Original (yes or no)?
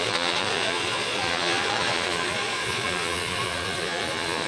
no